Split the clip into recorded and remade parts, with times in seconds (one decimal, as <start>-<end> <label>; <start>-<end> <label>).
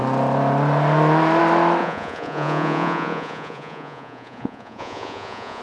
0.0-1.8 recorded; 1.8-5.6 remade